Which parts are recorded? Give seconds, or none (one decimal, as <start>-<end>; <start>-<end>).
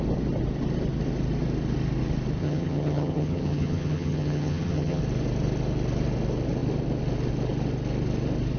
0.0-2.4; 5.0-8.6